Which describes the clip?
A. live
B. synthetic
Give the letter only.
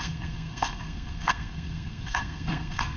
B